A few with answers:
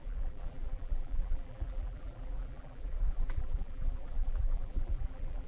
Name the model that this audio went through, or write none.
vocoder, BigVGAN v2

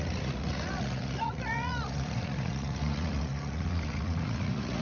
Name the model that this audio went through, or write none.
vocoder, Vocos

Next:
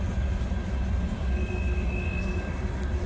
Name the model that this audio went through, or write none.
none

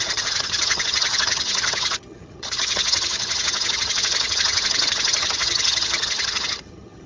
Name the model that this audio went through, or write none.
vocoder, HiFi-GAN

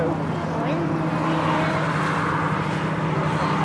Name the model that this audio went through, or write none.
none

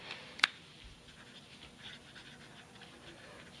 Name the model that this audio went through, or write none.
none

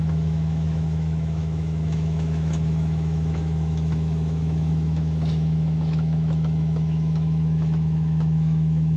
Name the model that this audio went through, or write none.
autoencoder, DAC-VAE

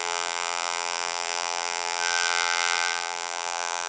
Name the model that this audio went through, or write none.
vocoder, BigVGAN v2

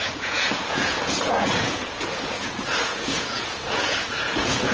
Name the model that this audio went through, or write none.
vocoder, Vocos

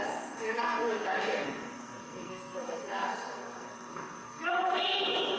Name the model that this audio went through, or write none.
codec, SNAC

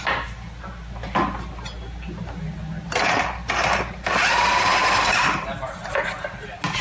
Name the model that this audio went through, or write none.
none